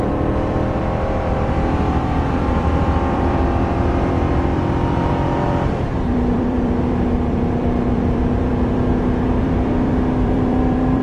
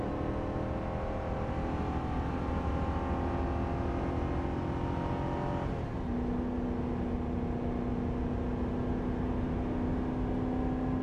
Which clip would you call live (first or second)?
second